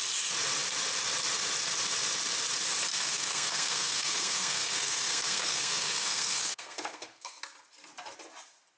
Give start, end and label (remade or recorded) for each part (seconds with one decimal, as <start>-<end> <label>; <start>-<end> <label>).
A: 0.0-2.9 recorded; 2.9-7.4 remade; 7.4-8.8 recorded